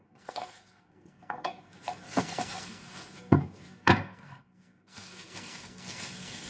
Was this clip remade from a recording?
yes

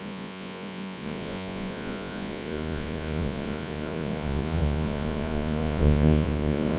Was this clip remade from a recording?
yes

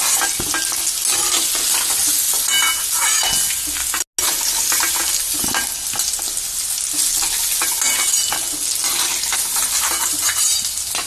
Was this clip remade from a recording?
no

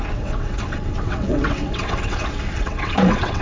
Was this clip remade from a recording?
yes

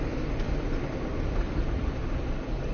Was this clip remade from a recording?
no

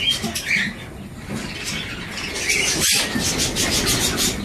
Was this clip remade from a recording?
no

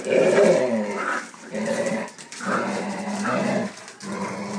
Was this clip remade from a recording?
no